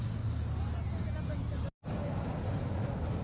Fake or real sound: real